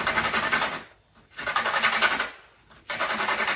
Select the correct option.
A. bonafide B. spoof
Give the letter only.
A